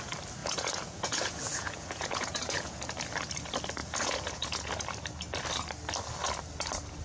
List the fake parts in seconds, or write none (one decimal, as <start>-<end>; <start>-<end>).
0.4-2.8; 3.8-4.7